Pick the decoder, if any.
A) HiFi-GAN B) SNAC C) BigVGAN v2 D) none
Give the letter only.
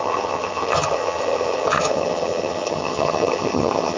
A